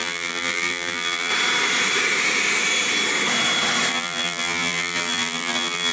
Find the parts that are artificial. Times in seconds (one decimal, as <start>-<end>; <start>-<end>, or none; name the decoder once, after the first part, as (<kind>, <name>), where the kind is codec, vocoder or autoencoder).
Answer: 0.0-1.3 (vocoder, BigVGAN v2); 3.9-5.9